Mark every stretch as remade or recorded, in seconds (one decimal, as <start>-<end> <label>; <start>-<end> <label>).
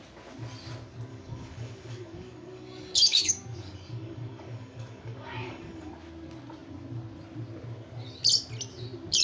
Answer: 0.0-1.1 recorded; 1.1-5.9 remade; 5.9-9.2 recorded